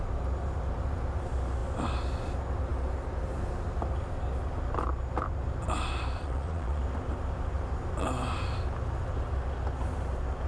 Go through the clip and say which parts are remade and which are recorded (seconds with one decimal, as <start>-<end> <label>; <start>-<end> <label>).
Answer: 0.0-6.2 recorded; 6.2-6.8 remade; 6.8-10.5 recorded